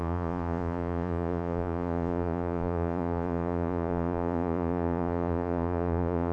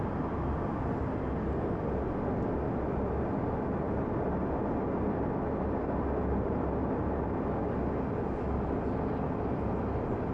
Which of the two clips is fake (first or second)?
first